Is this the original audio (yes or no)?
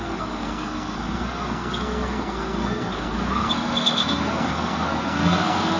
no